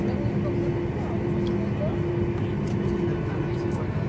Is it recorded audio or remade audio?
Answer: recorded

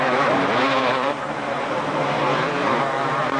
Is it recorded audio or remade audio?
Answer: remade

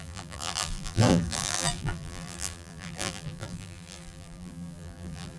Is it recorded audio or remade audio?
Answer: remade